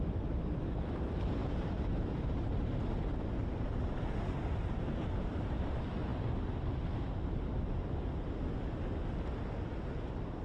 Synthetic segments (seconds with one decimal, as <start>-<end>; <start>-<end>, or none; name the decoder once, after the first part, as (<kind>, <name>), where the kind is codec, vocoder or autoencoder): 1.4-3.6 (vocoder, BigVGAN v2)

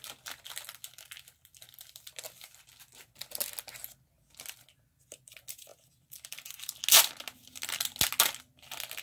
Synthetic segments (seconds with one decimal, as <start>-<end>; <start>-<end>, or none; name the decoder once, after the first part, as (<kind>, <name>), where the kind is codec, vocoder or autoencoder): 5.7-6.8 (vocoder, BigVGAN v2)

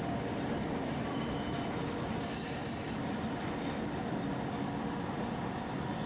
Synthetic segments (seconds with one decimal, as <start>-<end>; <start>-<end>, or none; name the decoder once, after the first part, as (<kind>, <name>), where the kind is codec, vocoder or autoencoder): none

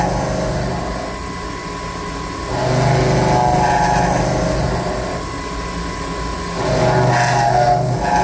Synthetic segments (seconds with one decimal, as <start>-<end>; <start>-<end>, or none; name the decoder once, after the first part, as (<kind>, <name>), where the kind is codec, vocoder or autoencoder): none

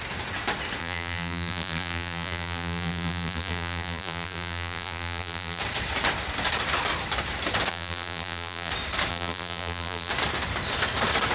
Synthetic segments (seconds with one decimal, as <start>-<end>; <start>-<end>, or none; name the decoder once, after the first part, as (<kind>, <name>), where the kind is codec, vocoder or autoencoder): 0.8-5.6 (vocoder, BigVGAN v2); 7.7-8.7; 9.1-10.1

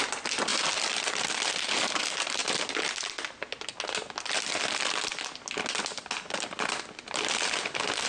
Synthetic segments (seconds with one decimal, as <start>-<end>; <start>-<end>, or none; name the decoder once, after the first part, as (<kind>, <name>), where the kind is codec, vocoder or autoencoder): none

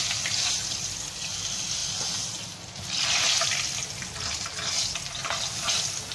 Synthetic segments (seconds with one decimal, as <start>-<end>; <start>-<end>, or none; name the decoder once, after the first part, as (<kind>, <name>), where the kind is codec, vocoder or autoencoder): none